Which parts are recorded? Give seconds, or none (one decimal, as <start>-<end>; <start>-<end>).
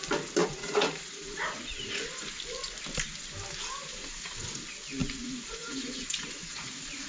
0.0-0.4; 2.0-3.9; 4.6-5.0